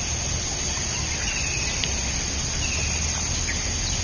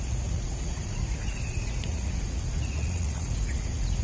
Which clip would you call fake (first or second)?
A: second